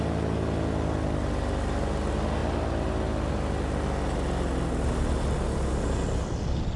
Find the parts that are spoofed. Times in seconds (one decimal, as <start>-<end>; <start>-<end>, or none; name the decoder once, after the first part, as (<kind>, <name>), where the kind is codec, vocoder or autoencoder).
none